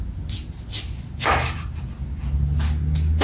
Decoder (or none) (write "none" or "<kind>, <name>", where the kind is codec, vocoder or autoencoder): none